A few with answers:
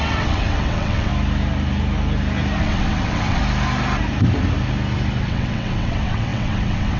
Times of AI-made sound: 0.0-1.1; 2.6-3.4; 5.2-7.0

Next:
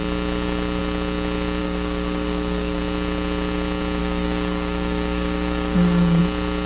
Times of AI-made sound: 1.6-2.8; 4.0-6.2

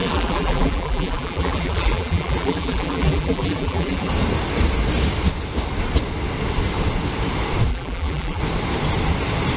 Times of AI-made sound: 0.0-4.1; 7.7-8.4